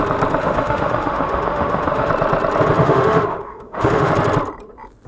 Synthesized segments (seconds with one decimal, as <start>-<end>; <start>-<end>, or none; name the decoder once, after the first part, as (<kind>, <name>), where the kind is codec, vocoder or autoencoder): 0.4-2.1 (autoencoder, DAC-VAE); 2.8-4.1